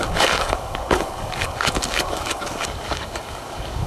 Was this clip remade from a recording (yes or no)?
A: yes